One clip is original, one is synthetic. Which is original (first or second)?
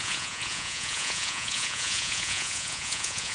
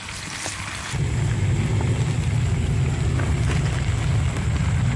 second